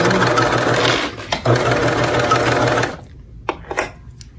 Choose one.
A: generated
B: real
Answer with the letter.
B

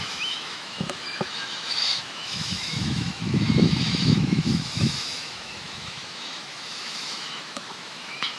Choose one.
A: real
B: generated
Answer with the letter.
B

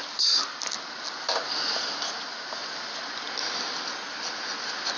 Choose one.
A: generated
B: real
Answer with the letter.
B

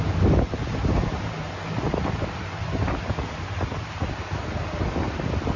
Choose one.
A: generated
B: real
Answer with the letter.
B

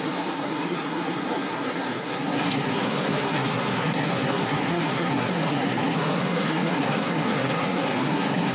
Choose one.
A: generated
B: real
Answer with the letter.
A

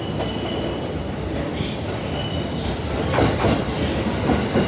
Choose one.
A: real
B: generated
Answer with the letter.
A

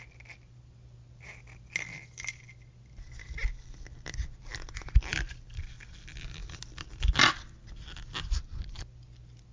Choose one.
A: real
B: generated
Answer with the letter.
A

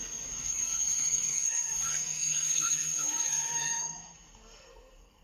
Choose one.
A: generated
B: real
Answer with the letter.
A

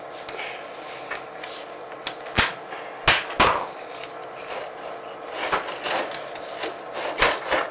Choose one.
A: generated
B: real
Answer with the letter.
B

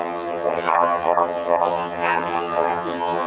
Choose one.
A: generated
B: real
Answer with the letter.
A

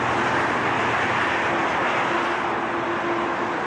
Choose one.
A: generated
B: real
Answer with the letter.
B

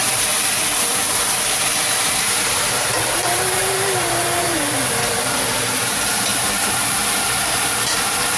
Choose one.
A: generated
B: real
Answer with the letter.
A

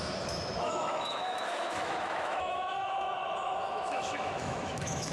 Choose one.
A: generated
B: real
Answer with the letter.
A